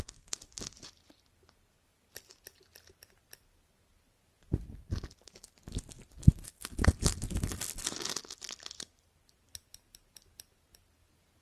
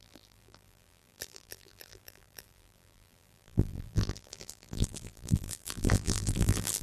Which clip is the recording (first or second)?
first